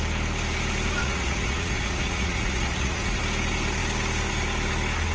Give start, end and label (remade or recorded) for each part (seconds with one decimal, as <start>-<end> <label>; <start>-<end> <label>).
0.0-1.0 recorded; 1.0-3.2 remade; 3.2-5.1 recorded